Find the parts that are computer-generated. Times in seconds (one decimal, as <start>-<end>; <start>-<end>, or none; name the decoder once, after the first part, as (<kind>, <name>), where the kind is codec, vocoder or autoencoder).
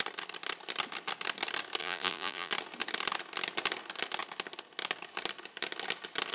1.8-2.5 (vocoder, BigVGAN v2)